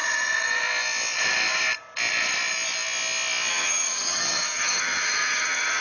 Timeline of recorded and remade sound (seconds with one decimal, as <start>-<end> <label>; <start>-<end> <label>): 0.0-3.5 recorded; 3.5-5.8 remade

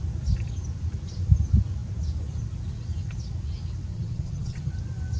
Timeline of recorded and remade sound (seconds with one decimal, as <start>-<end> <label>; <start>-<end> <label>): 0.0-3.9 recorded; 3.9-4.7 remade; 4.7-5.2 recorded

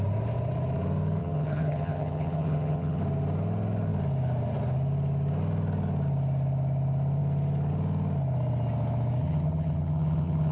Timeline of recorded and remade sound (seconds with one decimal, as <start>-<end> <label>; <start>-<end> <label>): 0.0-1.2 recorded; 1.2-3.0 remade; 3.0-9.2 recorded; 9.2-10.5 remade

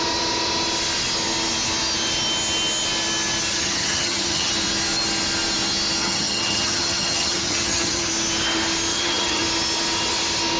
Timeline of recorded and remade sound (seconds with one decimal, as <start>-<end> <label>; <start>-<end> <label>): 0.0-3.5 recorded; 3.5-4.5 remade; 4.5-6.0 recorded; 6.0-8.1 remade; 8.1-8.9 recorded; 8.9-9.4 remade; 9.4-10.6 recorded

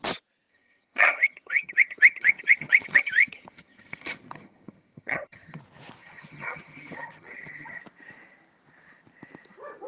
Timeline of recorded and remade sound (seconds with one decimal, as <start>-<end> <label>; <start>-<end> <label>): 0.0-0.5 recorded; 0.5-5.6 remade; 5.6-6.0 recorded; 6.0-7.8 remade; 7.8-9.9 recorded

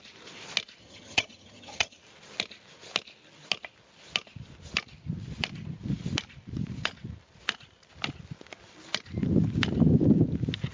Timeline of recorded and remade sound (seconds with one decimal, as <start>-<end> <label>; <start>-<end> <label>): 0.0-0.8 recorded; 0.8-2.0 remade; 2.0-10.7 recorded

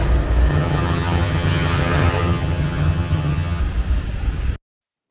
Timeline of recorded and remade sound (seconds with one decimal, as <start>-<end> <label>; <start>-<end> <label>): 0.0-0.5 recorded; 0.5-3.6 remade; 3.6-5.1 recorded